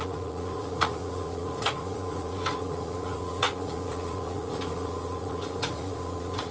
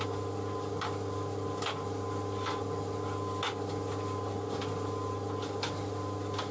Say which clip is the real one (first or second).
second